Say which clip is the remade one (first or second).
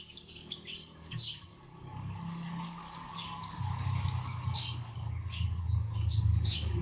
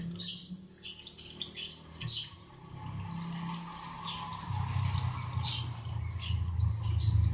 first